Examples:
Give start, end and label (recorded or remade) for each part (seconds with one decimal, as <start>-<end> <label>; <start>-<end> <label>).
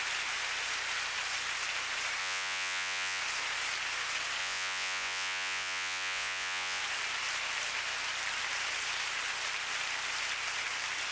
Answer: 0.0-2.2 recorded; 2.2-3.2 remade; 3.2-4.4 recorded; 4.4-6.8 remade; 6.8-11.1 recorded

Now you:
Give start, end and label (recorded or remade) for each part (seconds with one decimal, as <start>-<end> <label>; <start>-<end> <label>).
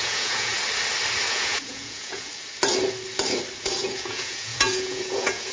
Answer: 0.0-0.5 remade; 0.5-1.3 recorded; 1.3-2.3 remade; 2.3-3.6 recorded; 3.6-5.5 remade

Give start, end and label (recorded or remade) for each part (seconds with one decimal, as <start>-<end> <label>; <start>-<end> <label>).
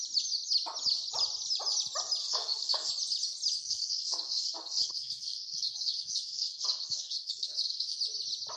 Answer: 0.0-2.2 recorded; 2.2-2.9 remade; 2.9-3.6 recorded; 3.6-8.0 remade; 8.0-8.6 recorded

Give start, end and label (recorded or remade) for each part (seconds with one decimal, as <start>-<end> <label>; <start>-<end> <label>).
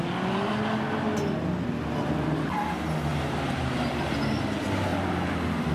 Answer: 0.0-5.7 recorded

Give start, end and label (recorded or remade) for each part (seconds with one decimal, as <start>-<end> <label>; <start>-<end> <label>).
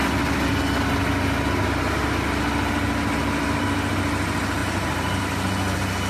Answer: 0.0-4.6 recorded; 4.6-5.2 remade; 5.2-6.1 recorded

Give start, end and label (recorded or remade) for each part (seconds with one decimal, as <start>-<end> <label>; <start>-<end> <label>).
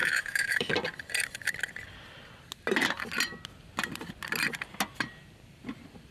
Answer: 0.0-0.7 remade; 0.7-6.1 recorded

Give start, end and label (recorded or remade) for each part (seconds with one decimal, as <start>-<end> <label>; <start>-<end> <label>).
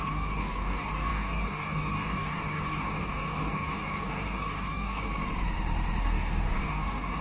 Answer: 0.0-5.1 remade; 5.1-6.0 recorded; 6.0-7.2 remade